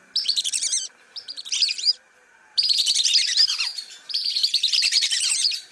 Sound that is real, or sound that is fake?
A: fake